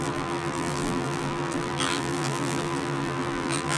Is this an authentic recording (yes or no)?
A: no